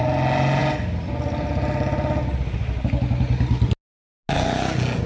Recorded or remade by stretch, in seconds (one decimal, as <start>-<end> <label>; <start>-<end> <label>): 0.0-5.1 recorded

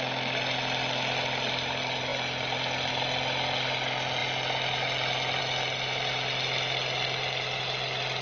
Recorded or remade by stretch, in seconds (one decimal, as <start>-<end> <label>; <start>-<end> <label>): 0.0-8.2 recorded

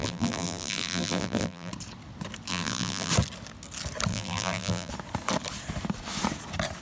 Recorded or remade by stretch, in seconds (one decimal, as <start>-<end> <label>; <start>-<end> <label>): 0.0-1.7 remade; 1.7-2.5 recorded; 2.5-3.1 remade; 3.1-4.1 recorded; 4.1-4.9 remade; 4.9-6.8 recorded

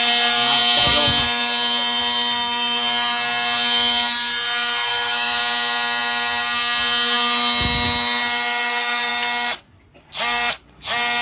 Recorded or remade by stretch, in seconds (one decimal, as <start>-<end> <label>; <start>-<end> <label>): 0.0-4.9 recorded; 4.9-5.4 remade; 5.4-11.2 recorded

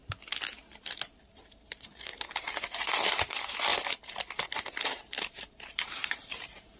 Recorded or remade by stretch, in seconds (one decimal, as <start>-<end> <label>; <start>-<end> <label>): 0.0-1.2 recorded; 1.2-3.7 remade; 3.7-5.0 recorded; 5.0-6.8 remade

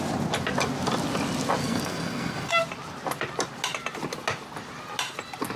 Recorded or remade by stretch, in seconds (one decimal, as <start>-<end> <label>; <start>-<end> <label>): 0.0-1.6 recorded; 1.6-2.5 remade; 2.5-5.6 recorded

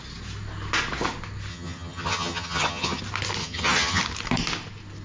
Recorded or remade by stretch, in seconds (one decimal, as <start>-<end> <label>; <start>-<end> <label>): 0.0-1.5 recorded; 1.5-3.0 remade; 3.0-3.4 recorded; 3.4-4.0 remade; 4.0-5.0 recorded